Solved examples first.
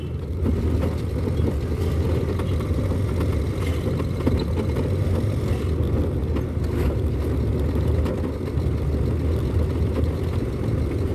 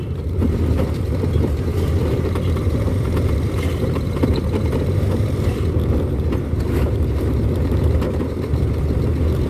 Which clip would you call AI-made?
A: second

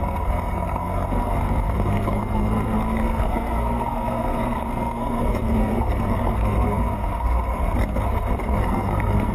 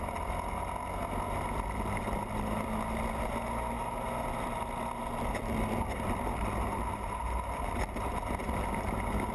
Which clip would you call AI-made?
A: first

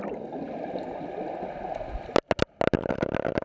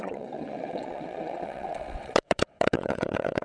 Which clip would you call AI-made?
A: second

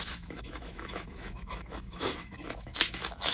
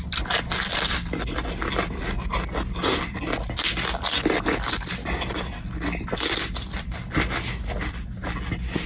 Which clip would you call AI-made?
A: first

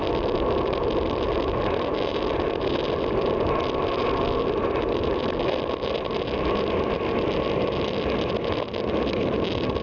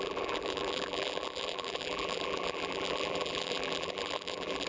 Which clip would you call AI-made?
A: second